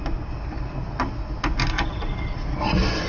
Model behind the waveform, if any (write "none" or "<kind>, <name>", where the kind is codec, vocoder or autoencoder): none